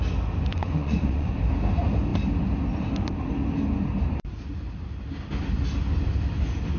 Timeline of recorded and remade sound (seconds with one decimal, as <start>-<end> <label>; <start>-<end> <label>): 0.0-0.5 recorded; 0.5-1.3 remade; 1.3-6.8 recorded